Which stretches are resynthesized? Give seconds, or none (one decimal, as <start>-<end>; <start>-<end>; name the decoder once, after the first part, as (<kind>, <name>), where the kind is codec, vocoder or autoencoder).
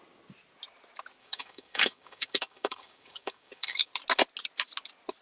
1.2-3.9 (codec, DAC)